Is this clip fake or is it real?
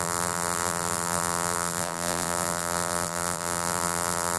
fake